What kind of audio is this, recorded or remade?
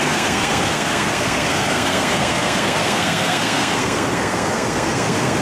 remade